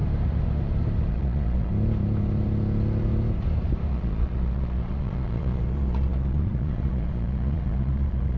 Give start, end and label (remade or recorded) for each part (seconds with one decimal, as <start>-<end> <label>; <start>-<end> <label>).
0.0-1.1 recorded; 1.1-1.7 remade; 1.7-3.9 recorded; 3.9-8.4 remade